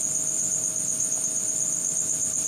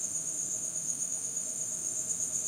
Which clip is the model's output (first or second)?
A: second